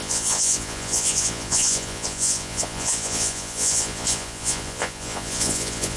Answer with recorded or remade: remade